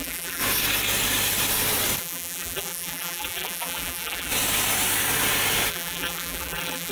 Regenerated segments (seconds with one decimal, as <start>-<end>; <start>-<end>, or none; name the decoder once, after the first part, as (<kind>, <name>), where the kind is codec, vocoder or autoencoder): 0.0-0.4 (vocoder, BigVGAN v2); 2.0-4.3; 5.7-6.9